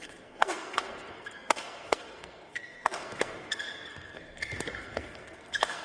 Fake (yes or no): yes